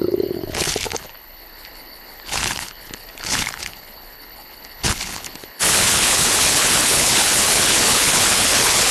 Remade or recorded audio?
remade